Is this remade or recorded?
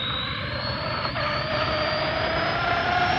recorded